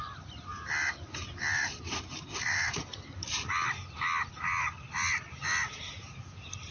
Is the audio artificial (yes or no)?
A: no